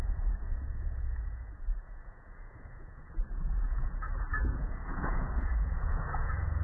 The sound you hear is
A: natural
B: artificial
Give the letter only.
B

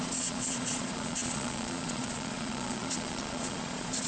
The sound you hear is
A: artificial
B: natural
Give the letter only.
A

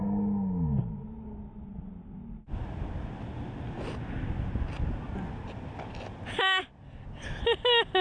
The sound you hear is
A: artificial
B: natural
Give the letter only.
B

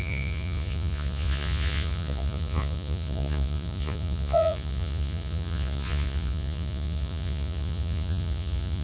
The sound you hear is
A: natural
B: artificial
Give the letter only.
B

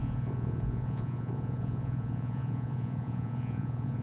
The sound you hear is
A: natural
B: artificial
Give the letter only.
B